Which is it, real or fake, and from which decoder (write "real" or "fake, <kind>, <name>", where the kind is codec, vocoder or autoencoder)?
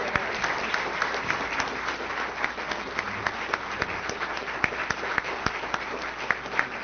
real